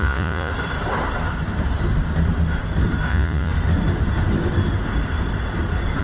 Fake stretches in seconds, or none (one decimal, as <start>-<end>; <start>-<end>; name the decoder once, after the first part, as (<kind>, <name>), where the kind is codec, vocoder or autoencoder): 0.0-0.5 (vocoder, Vocos); 3.1-3.5